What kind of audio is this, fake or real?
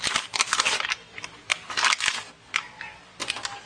real